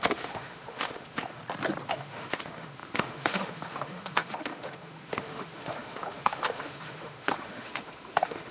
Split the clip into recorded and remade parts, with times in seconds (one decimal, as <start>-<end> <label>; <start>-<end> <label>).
0.0-1.4 remade; 1.4-1.9 recorded; 1.9-8.5 remade